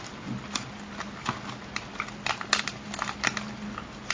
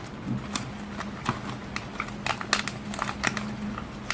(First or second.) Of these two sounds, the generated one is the first